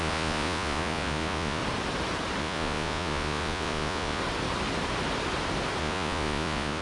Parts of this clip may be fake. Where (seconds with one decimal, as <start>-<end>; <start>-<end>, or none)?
0.0-1.6; 2.4-4.2; 5.8-6.8